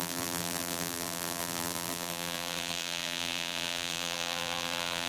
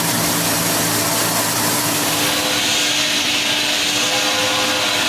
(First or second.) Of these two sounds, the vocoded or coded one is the first